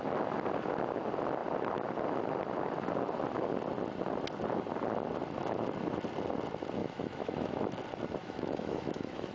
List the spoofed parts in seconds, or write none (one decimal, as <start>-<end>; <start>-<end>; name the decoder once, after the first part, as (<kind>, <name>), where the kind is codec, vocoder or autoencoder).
6.8-7.6 (autoencoder, DAC-VAE); 8.2-9.3